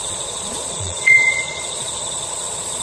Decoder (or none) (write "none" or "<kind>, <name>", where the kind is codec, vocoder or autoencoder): vocoder, Vocos